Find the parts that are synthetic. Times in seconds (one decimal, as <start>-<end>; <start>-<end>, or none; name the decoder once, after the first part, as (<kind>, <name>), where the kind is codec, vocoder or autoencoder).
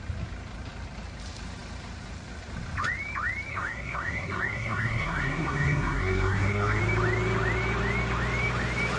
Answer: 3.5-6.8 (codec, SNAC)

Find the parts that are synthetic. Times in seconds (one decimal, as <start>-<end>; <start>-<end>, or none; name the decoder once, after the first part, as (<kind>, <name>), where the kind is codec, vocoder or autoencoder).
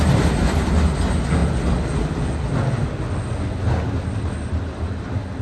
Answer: none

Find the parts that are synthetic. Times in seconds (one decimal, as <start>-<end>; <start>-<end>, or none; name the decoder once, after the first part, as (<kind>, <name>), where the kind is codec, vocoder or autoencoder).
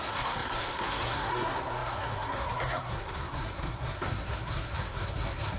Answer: 0.0-5.6 (codec, SNAC)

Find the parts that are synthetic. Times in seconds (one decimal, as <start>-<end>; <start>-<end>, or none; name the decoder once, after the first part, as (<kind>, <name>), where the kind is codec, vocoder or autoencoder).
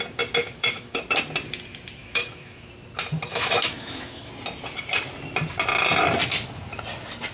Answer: 0.4-1.0 (autoencoder, DAC-VAE); 2.0-2.7; 3.3-4.3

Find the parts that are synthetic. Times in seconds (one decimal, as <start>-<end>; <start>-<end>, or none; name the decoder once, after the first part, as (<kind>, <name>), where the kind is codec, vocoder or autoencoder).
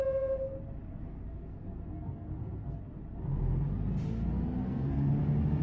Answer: 0.9-2.8 (codec, SNAC); 4.6-5.1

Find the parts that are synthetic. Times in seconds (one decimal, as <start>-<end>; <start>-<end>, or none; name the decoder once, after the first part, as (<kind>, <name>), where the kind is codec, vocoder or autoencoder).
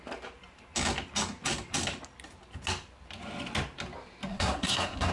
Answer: 4.3-5.1 (codec, SNAC)